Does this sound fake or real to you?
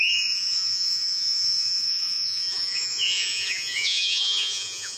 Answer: fake